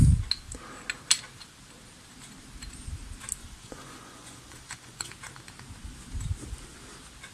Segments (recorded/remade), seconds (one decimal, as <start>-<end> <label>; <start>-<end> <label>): 0.0-3.4 recorded; 3.4-5.1 remade; 5.1-7.3 recorded